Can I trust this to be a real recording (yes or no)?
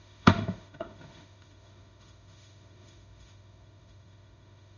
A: no